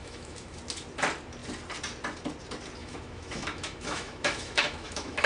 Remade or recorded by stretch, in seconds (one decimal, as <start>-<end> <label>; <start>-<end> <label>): 0.0-0.6 remade; 0.6-2.8 recorded; 2.8-5.3 remade